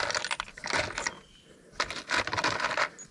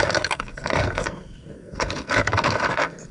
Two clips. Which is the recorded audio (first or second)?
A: first